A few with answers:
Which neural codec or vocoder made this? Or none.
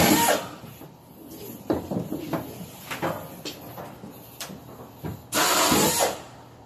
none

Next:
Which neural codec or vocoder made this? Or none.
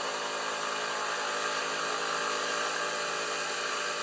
none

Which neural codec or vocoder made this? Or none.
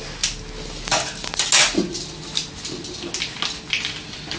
none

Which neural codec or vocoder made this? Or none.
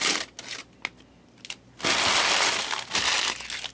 none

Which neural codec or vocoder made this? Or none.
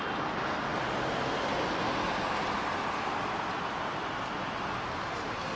none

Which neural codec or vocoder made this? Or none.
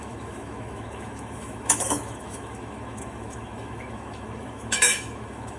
autoencoder, DAC-VAE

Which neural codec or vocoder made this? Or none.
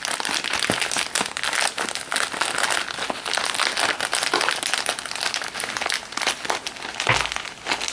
none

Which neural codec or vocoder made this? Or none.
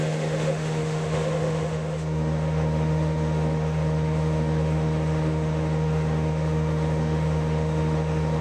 autoencoder, DAC-VAE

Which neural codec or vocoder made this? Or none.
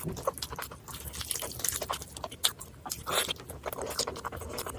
none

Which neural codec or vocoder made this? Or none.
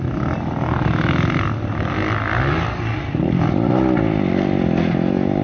none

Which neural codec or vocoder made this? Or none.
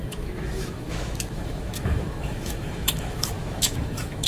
autoencoder, DAC-VAE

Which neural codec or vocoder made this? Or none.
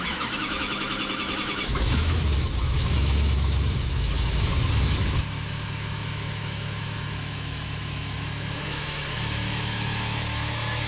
autoencoder, DAC-VAE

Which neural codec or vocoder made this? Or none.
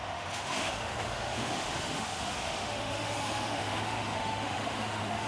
autoencoder, DAC-VAE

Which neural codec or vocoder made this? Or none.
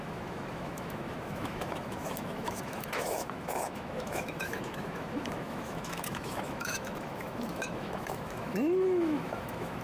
autoencoder, DAC-VAE